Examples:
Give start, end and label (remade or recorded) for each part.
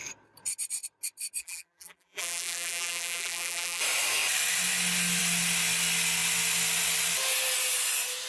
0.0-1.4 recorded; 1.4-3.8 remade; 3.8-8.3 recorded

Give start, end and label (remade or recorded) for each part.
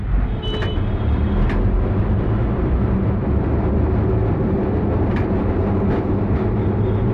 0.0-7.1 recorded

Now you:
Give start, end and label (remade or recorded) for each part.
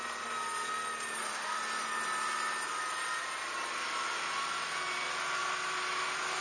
0.0-6.4 recorded